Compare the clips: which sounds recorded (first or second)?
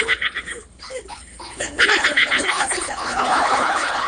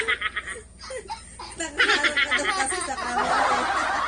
second